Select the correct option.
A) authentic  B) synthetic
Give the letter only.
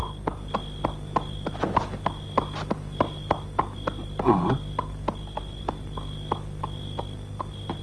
A